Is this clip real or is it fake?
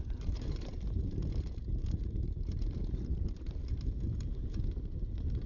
fake